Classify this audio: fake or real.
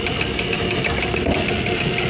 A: real